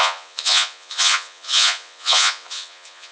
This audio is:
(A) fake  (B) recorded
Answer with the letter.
A